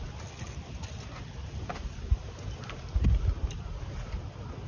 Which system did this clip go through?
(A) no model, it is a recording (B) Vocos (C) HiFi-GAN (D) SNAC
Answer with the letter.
A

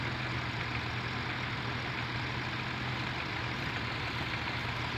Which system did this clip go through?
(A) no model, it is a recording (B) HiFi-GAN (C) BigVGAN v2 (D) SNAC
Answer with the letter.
A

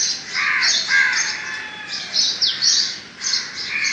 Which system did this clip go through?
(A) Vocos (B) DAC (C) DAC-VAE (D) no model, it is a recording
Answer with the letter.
D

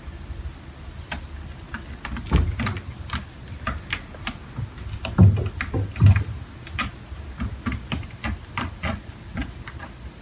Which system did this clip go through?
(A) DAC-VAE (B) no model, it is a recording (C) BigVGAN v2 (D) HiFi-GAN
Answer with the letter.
B